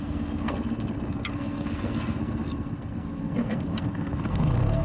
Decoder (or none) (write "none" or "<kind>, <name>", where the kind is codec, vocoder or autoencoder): codec, SNAC